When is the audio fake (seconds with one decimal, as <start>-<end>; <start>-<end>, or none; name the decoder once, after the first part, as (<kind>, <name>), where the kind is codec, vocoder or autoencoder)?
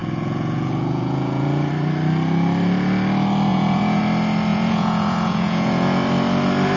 0.0-1.7 (vocoder, Vocos); 3.5-4.0; 4.5-6.0